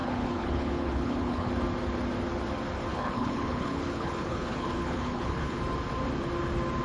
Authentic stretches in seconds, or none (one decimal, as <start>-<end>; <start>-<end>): 1.5-2.9; 5.6-6.8